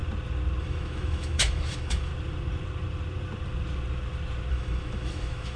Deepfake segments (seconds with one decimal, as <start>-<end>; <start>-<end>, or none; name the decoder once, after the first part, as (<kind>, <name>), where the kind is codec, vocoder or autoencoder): 0.6-2.1 (autoencoder, DAC-VAE); 4.5-5.6